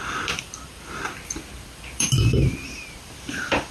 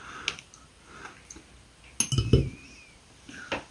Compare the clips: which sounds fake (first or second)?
first